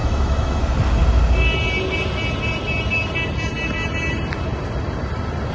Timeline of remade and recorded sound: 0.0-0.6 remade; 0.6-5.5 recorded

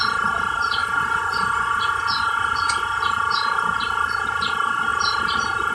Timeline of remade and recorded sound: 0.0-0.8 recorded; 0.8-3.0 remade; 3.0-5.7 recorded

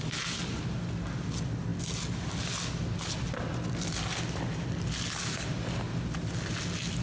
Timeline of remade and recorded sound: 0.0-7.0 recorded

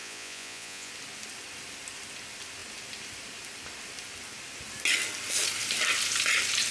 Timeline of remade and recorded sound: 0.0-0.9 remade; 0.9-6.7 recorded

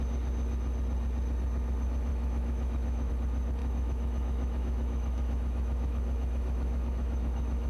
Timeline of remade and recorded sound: 0.0-2.1 recorded; 2.1-3.1 remade; 3.1-3.6 recorded; 3.6-7.7 remade